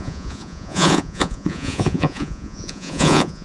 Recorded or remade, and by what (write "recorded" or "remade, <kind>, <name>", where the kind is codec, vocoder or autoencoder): remade, vocoder, Vocos